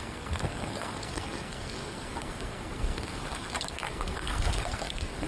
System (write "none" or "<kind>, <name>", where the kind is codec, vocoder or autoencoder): codec, SNAC